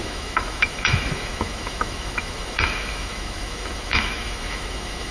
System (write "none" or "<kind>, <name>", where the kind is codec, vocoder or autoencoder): autoencoder, DAC-VAE